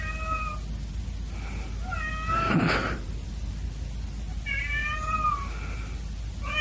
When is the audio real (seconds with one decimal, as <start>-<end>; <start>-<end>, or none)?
0.0-2.8; 3.6-4.8; 5.3-6.6